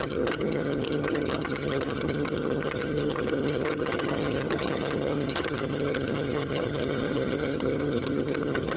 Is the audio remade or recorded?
remade